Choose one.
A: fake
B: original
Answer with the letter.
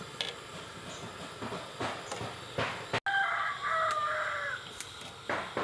B